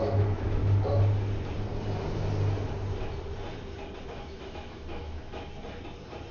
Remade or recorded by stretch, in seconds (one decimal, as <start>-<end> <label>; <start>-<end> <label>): 0.0-0.6 remade; 0.6-4.0 recorded; 4.0-5.5 remade; 5.5-6.3 recorded